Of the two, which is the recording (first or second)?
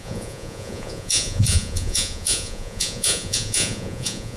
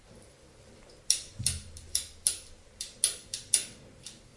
second